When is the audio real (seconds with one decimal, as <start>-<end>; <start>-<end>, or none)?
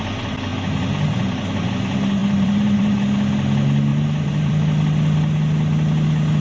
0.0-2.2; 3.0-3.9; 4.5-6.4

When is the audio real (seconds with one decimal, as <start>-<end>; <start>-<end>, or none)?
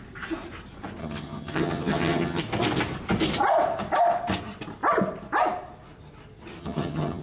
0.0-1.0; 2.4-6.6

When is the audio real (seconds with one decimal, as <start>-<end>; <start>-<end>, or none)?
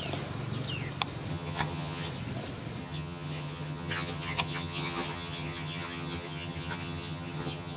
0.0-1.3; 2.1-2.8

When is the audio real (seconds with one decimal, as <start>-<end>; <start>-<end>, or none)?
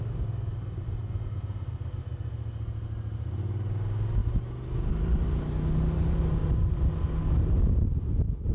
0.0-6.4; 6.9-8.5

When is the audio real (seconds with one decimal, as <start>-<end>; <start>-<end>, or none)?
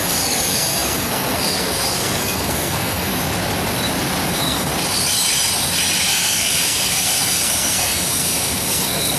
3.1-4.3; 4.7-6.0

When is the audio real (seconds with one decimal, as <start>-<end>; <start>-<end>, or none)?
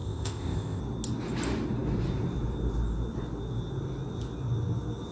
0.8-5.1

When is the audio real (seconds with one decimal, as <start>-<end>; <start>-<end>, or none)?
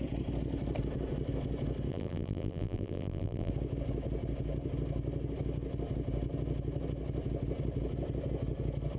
0.0-1.9; 3.5-9.0